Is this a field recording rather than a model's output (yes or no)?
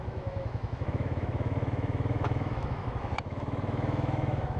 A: no